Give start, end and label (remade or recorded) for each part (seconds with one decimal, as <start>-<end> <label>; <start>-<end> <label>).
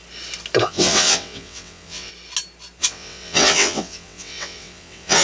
0.0-0.6 recorded; 0.6-2.1 remade; 2.1-2.8 recorded; 2.8-5.2 remade